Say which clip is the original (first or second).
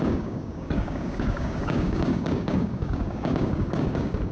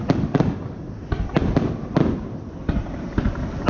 second